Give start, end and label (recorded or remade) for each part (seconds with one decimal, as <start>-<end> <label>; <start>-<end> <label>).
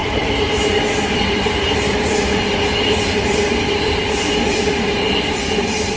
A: 0.0-6.0 recorded